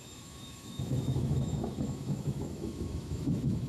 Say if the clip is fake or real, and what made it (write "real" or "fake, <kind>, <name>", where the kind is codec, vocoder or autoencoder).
fake, autoencoder, DAC-VAE